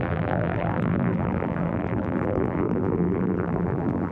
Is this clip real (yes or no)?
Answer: no